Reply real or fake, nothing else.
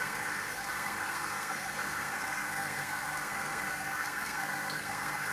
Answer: fake